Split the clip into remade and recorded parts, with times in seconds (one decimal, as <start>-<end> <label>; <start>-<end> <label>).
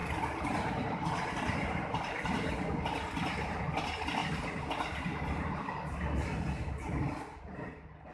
0.0-8.1 recorded